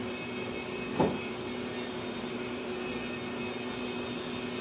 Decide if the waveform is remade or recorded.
recorded